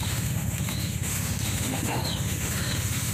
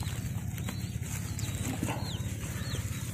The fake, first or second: first